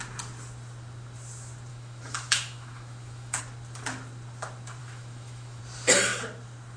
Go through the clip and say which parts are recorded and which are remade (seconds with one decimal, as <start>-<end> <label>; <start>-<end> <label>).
0.0-1.7 recorded; 1.7-3.4 remade; 3.4-4.8 recorded; 4.8-5.6 remade; 5.6-6.8 recorded